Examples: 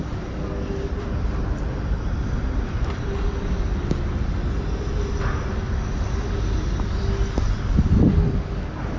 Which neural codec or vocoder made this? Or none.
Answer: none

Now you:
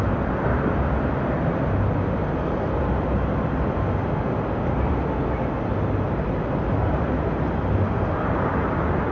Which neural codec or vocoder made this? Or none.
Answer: none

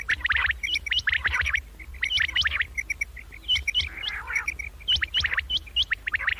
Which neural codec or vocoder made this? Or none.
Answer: none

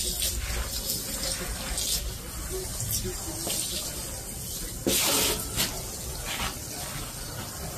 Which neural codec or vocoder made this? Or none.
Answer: none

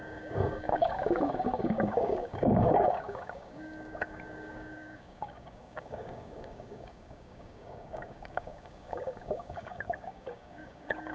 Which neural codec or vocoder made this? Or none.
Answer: codec, DAC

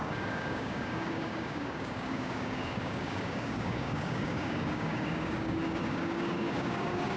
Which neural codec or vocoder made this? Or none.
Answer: codec, DAC